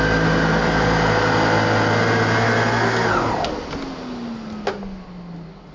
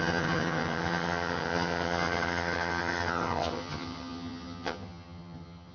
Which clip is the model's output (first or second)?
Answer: second